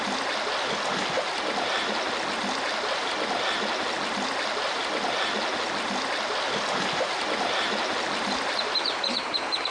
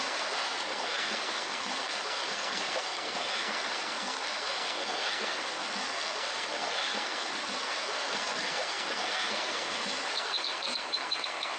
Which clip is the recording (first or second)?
first